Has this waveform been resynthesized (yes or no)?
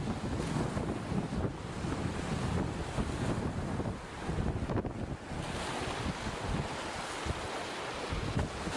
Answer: no